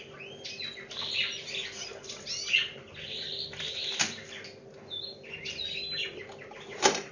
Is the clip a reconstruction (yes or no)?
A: no